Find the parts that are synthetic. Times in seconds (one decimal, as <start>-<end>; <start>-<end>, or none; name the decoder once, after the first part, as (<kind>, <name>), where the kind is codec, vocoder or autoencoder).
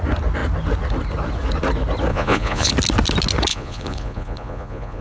2.1-2.7 (vocoder, Vocos); 3.5-5.0